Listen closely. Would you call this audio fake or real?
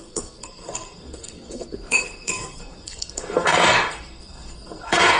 fake